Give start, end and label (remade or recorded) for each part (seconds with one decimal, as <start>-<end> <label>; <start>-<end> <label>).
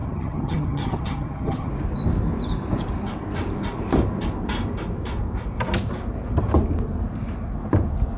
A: 0.0-1.7 remade; 1.7-8.2 recorded